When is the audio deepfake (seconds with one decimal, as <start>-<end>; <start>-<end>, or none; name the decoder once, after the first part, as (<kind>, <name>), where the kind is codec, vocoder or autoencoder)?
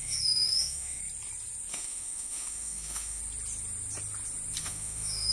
0.0-1.0 (autoencoder, DAC-VAE); 1.7-3.2; 4.6-5.3